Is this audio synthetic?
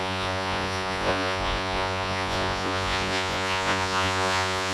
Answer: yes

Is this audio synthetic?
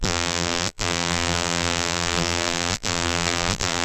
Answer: yes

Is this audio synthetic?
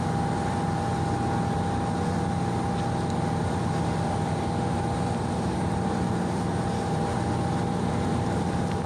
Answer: no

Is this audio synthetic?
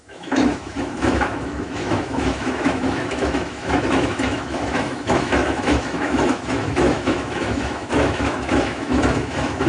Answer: yes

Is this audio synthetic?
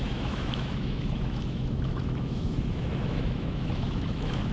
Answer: yes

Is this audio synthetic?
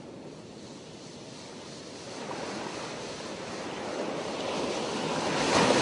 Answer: no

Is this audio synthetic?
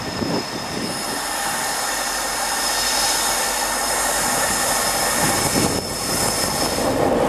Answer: no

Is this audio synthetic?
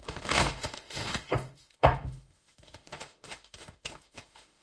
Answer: yes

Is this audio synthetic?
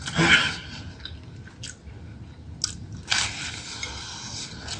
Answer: no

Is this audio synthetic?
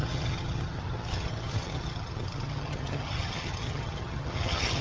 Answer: yes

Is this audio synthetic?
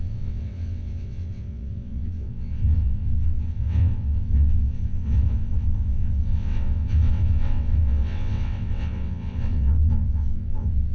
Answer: yes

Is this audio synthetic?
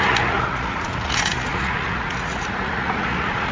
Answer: yes